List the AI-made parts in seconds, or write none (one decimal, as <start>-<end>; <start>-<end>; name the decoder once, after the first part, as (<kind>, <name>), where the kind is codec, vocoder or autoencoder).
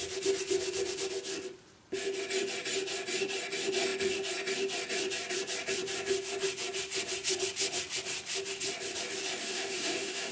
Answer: 9.4-10.3 (autoencoder, DAC-VAE)